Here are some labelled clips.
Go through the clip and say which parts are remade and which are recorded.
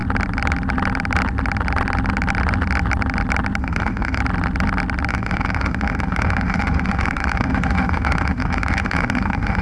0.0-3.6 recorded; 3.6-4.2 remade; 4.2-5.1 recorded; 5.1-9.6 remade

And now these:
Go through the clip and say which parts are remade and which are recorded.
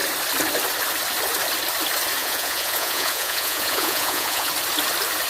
0.0-2.2 recorded; 2.2-4.5 remade; 4.5-5.3 recorded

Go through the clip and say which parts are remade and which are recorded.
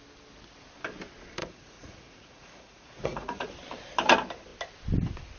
0.0-1.4 recorded; 1.4-3.5 remade; 3.5-5.4 recorded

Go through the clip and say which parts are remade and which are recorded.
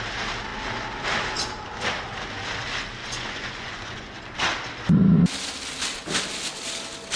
0.0-3.0 recorded; 3.0-4.2 remade; 4.2-7.2 recorded